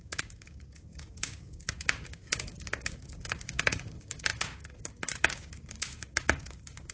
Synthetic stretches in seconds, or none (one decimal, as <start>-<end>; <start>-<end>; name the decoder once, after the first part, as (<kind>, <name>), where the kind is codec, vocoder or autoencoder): 0.0-6.9 (codec, DAC)